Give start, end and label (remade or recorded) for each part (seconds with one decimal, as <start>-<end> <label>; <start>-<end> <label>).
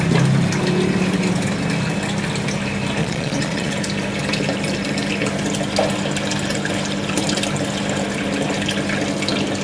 0.0-3.0 recorded; 3.0-3.7 remade; 3.7-9.6 recorded